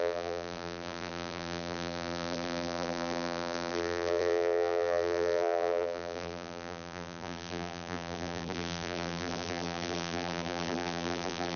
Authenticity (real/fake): fake